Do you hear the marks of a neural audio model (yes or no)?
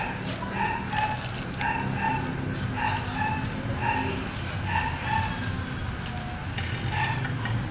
no